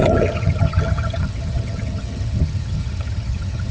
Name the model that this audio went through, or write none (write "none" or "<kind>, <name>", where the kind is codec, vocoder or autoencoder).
vocoder, HiFi-GAN